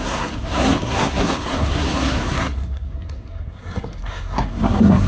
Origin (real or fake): fake